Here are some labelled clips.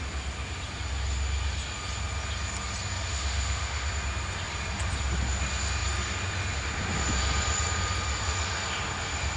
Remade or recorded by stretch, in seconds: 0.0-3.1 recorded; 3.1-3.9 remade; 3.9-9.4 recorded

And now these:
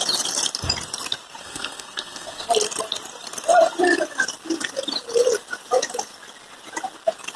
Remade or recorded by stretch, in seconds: 0.0-1.4 recorded; 1.4-2.5 remade; 2.5-7.4 recorded

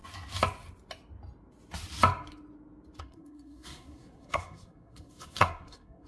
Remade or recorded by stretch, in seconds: 0.0-3.0 recorded; 3.0-6.1 remade

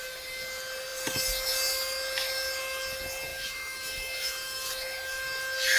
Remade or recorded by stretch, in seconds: 0.0-3.3 recorded; 3.3-4.7 remade; 4.7-5.8 recorded

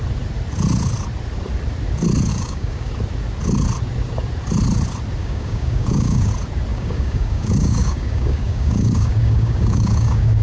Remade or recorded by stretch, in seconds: 0.0-2.3 recorded; 2.3-2.9 remade; 2.9-5.2 recorded; 5.2-6.3 remade; 6.3-6.7 recorded; 6.7-10.4 remade